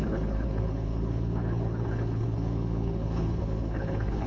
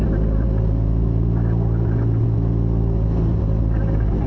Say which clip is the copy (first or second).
first